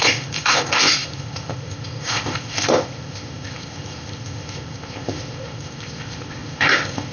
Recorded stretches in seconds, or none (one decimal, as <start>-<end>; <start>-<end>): none